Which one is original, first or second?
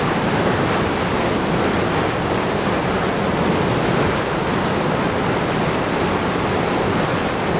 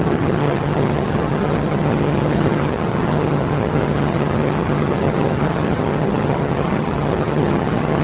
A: first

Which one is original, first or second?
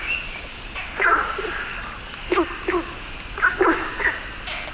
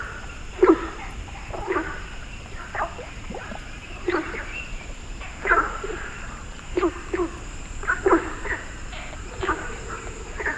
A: first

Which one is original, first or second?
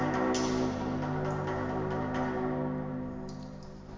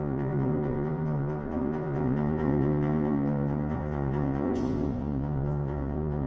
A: first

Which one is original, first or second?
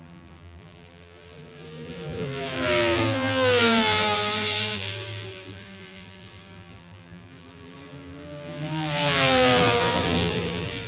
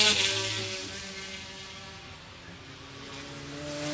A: second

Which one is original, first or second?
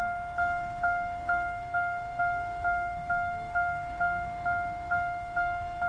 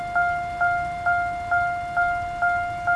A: second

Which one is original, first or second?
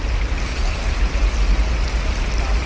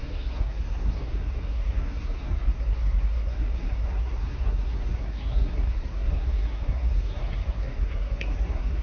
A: first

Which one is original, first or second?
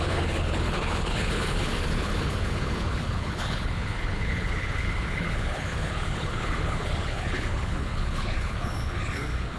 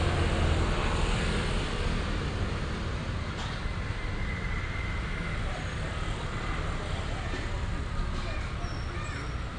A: second